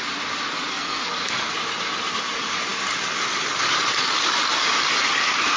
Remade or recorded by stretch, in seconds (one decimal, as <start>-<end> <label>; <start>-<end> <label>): 0.0-0.7 recorded; 0.7-1.5 remade; 1.5-5.6 recorded